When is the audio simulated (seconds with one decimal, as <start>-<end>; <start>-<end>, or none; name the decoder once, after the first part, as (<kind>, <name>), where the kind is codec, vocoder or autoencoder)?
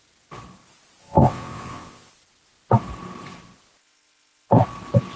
1.0-2.1 (vocoder, WaveNeXt)